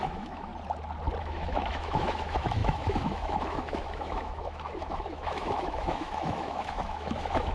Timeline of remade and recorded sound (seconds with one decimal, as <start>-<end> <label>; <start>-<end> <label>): 0.0-0.5 remade; 0.5-1.2 recorded; 1.2-7.5 remade